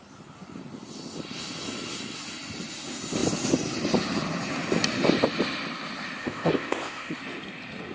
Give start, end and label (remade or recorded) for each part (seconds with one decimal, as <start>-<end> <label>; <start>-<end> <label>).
0.0-6.2 recorded; 6.2-7.2 remade; 7.2-7.9 recorded

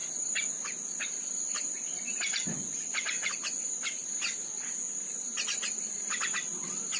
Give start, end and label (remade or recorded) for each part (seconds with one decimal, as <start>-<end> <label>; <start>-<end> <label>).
0.0-7.0 recorded

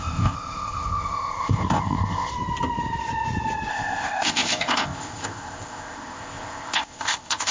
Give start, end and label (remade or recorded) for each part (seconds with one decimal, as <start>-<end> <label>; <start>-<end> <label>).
0.0-2.3 remade; 2.3-3.7 recorded; 3.7-7.5 remade

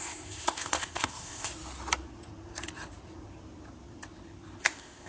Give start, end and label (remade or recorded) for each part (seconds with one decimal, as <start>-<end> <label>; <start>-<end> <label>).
0.0-1.5 remade; 1.5-4.6 recorded; 4.6-5.1 remade

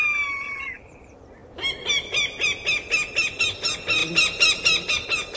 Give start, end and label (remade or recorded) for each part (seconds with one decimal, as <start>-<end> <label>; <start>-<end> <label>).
0.0-5.4 recorded